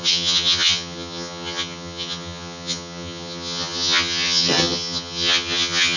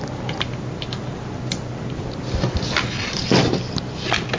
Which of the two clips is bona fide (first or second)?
second